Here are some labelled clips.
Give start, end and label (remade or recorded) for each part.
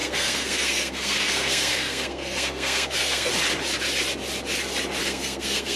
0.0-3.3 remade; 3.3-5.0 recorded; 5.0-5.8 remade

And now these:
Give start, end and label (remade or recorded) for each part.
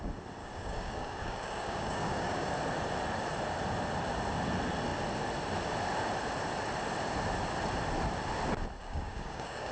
0.0-0.4 recorded; 0.4-2.5 remade; 2.5-8.8 recorded; 8.8-9.7 remade